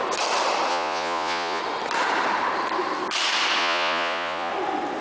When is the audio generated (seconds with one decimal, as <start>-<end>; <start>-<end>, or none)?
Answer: 0.7-1.6; 3.6-4.5